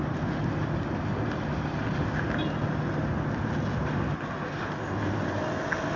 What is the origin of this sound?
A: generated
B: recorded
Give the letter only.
B